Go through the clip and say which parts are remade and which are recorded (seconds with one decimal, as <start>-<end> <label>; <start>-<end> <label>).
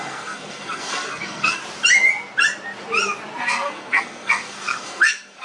0.0-1.6 remade; 1.6-3.4 recorded; 3.4-5.4 remade